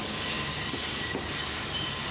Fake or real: real